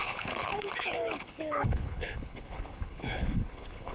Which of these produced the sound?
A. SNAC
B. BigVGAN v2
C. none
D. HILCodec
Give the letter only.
D